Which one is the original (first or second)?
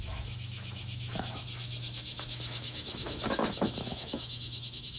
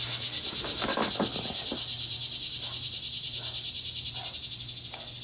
second